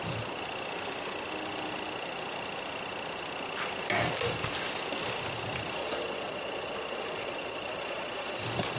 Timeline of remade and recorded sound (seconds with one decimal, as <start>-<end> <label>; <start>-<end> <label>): 0.0-5.8 recorded; 5.8-8.4 remade; 8.4-8.8 recorded